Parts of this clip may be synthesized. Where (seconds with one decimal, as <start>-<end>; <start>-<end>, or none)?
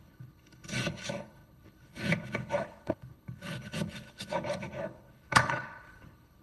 0.0-6.4